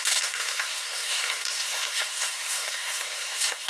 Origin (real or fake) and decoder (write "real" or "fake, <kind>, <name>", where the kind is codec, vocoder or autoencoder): fake, codec, SNAC